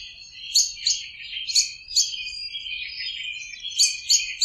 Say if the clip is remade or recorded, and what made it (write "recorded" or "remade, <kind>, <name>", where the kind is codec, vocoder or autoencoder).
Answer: recorded